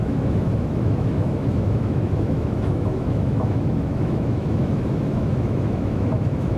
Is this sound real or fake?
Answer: fake